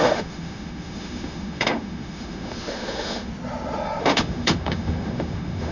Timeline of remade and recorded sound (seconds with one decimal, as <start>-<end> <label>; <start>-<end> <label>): 0.0-3.3 remade; 3.3-4.0 recorded; 4.0-5.7 remade